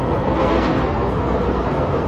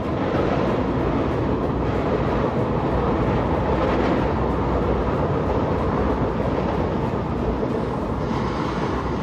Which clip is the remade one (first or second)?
first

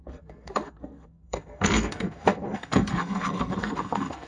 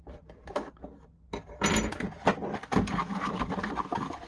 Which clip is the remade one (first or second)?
first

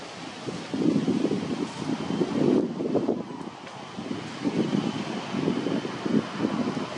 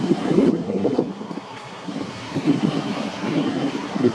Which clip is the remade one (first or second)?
second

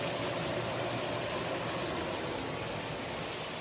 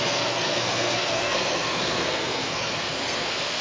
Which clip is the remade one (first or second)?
second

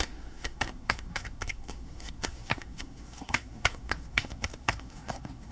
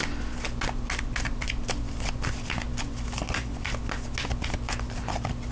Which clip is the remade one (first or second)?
first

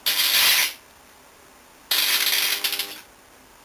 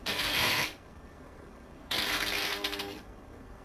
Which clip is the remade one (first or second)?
second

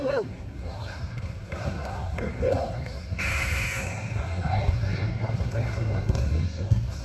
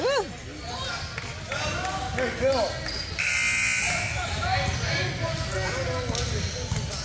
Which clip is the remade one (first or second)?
first